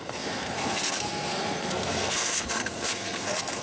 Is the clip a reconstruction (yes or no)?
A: yes